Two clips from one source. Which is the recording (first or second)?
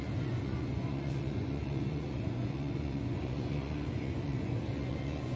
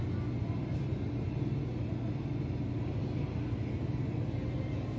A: second